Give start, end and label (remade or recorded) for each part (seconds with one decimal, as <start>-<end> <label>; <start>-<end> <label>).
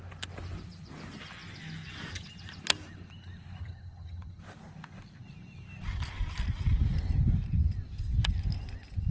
0.0-3.6 recorded; 3.6-4.4 remade; 4.4-9.1 recorded